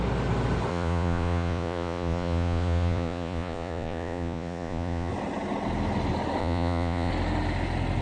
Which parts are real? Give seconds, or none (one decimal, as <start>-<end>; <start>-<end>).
0.0-0.7; 5.1-6.4; 7.1-8.0